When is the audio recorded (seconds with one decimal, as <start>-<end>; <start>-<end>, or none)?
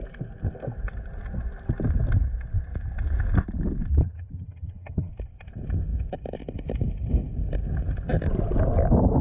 0.0-4.0; 5.1-9.2